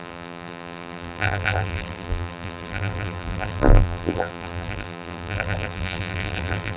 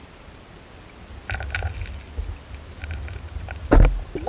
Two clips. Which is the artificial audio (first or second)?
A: first